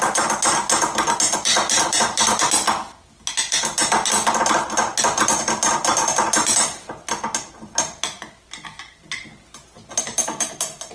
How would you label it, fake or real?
real